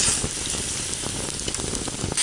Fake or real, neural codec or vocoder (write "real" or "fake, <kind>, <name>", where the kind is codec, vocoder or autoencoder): real